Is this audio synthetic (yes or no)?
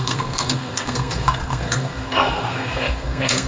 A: yes